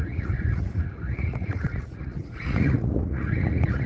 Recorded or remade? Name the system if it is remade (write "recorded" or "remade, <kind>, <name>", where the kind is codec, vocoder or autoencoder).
remade, vocoder, Vocos